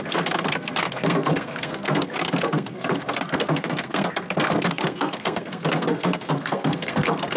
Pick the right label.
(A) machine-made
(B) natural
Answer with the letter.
A